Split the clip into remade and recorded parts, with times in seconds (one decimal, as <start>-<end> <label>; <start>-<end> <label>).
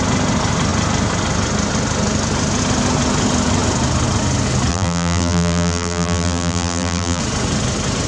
0.0-4.7 recorded; 4.7-7.2 remade; 7.2-8.1 recorded